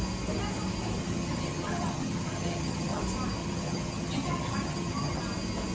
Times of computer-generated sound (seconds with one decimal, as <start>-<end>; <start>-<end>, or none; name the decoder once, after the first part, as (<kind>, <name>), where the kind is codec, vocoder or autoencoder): 1.0-3.0 (vocoder, HiFi-GAN); 3.4-5.2